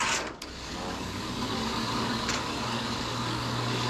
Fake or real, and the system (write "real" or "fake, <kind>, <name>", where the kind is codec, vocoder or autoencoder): fake, codec, DAC